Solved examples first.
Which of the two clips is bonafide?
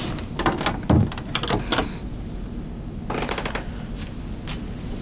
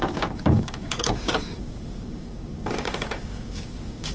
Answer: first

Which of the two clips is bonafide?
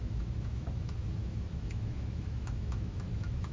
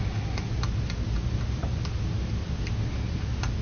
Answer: second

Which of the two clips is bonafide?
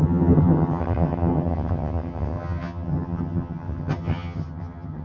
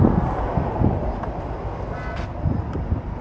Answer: second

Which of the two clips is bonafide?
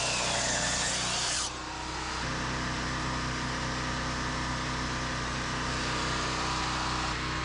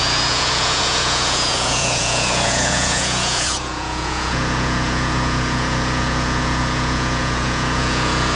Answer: first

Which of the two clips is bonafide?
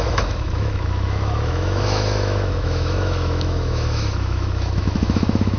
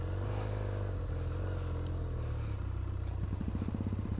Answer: second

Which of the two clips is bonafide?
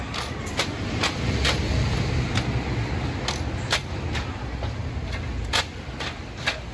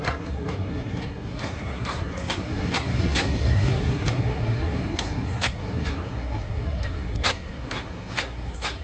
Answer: first